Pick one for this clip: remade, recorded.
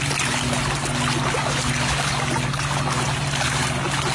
recorded